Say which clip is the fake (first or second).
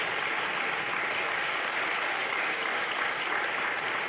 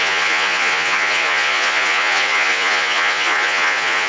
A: second